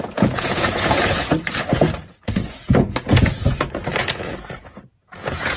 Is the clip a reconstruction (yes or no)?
yes